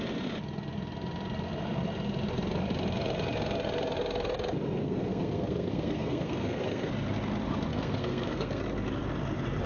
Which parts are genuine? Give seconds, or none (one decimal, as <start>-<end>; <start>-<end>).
0.0-4.8; 6.9-7.7; 8.6-9.7